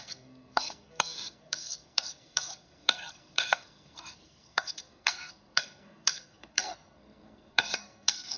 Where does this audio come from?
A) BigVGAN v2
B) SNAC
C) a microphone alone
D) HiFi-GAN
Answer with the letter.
B